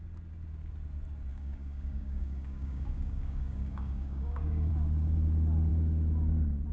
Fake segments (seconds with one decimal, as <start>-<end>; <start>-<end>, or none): 1.3-4.7